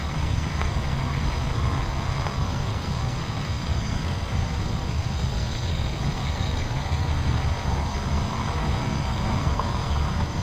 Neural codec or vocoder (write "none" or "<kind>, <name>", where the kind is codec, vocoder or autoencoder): codec, SNAC